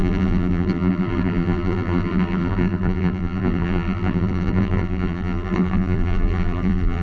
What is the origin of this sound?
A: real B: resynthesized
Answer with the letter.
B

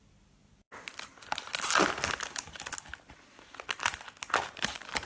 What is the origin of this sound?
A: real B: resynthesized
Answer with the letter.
A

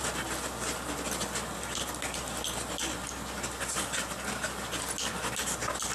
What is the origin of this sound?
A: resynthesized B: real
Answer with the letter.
B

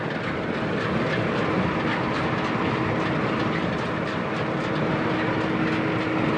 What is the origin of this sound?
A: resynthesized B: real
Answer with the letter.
B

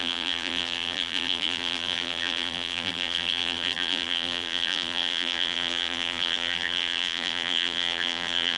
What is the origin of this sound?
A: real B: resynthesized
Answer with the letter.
B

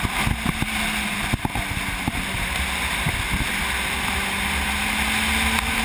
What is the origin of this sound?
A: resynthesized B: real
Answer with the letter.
B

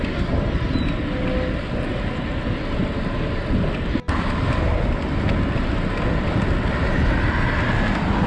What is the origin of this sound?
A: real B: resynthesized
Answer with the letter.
A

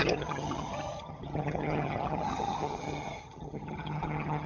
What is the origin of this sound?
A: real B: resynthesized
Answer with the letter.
B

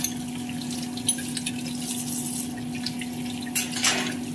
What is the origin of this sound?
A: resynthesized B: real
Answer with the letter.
B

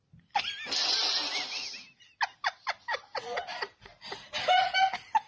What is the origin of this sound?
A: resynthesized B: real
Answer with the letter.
B